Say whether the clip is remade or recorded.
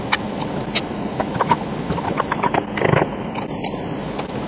recorded